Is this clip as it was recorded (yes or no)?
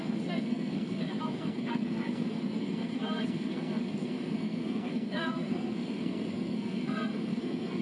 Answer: no